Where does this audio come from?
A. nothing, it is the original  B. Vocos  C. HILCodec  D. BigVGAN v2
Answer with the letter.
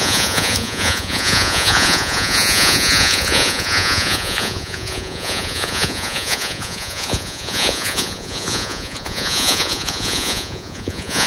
B